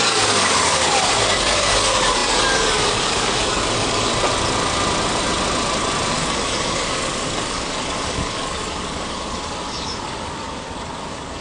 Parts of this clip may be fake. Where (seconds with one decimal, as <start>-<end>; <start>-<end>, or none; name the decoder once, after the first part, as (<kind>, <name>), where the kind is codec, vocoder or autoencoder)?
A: 0.0-4.1 (codec, DAC); 6.1-11.4